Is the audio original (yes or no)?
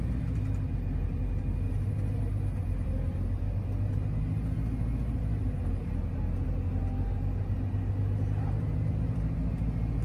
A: yes